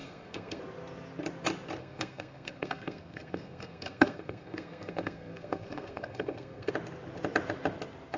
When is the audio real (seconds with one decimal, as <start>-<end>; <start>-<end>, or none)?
0.6-1.8; 6.7-8.2